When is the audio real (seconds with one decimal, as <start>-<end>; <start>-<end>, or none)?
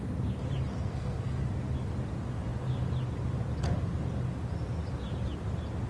0.0-0.7; 1.4-5.9